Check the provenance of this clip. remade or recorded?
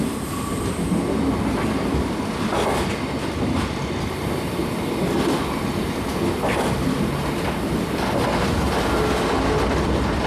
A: recorded